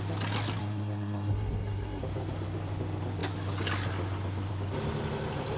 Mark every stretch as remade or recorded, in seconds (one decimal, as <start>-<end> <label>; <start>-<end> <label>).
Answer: 0.0-0.6 recorded; 0.6-2.0 remade; 2.0-5.6 recorded